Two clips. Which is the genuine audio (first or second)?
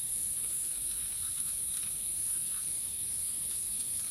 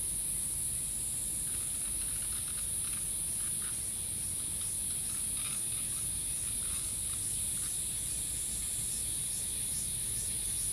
second